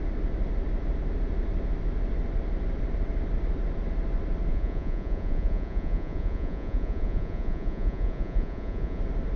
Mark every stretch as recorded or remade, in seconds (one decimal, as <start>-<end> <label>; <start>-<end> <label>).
0.0-4.5 recorded; 4.5-9.0 remade; 9.0-9.4 recorded